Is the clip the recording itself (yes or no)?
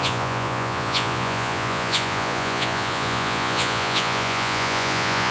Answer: no